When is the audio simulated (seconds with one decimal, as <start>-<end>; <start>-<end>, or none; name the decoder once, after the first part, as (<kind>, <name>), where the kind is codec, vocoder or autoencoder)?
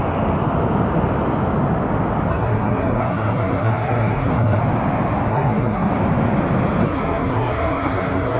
2.3-4.6 (codec, SNAC); 5.3-5.9; 6.8-8.4